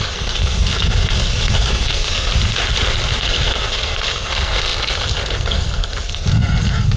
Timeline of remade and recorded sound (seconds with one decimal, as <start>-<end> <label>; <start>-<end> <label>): 0.0-2.3 remade; 2.3-3.2 recorded; 3.2-7.0 remade